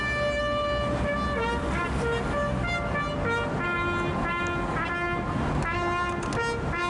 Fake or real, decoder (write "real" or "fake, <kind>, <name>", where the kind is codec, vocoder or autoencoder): real